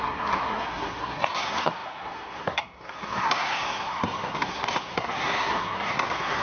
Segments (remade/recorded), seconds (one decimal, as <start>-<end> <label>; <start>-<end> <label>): 0.0-6.4 remade